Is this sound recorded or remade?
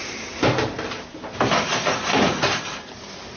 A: remade